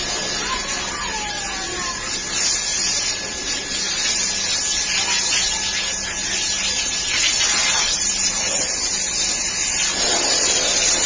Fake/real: real